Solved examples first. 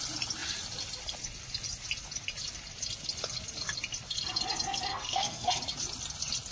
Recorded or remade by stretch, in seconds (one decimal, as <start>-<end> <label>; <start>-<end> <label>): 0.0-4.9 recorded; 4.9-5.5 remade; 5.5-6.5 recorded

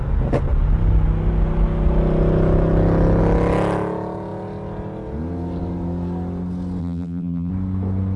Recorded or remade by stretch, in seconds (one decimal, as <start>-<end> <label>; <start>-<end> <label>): 0.0-6.8 recorded; 6.8-7.5 remade; 7.5-8.2 recorded

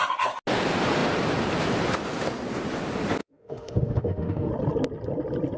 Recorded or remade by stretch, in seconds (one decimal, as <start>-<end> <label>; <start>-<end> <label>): 0.0-3.2 recorded; 3.2-4.5 remade; 4.5-5.6 recorded

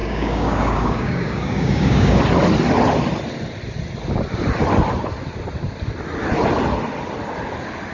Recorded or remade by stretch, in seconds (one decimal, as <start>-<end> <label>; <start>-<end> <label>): 0.0-2.2 remade; 2.2-7.9 recorded

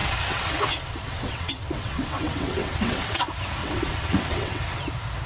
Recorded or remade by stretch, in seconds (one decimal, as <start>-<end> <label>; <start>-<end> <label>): 0.0-3.2 remade; 3.2-3.6 recorded; 3.6-4.6 remade; 4.6-5.3 recorded

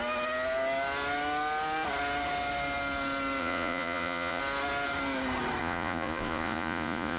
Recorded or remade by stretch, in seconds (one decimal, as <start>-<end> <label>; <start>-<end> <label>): 0.0-3.4 recorded; 3.4-4.4 remade; 4.4-5.6 recorded; 5.6-7.2 remade

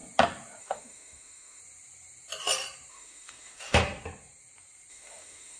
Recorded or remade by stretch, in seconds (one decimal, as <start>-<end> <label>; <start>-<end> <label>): 0.0-0.6 recorded; 0.6-1.6 remade; 1.6-2.9 recorded; 2.9-3.8 remade; 3.8-4.9 recorded; 4.9-5.6 remade